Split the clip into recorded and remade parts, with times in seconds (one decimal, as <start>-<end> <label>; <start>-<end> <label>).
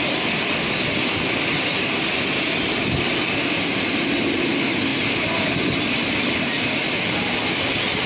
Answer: 0.0-8.1 recorded